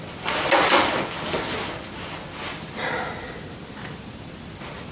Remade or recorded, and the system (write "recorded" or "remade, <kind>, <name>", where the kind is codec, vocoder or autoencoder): recorded